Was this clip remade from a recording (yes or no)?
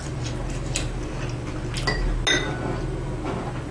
no